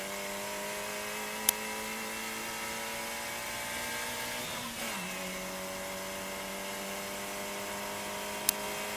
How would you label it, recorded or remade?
recorded